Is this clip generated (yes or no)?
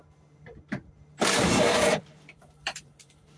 yes